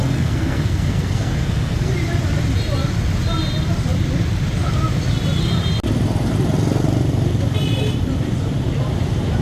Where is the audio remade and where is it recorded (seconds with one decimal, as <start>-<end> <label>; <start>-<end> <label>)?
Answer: 0.0-1.9 remade; 1.9-9.4 recorded